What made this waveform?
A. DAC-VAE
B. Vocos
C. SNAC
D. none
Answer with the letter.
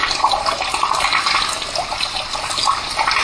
D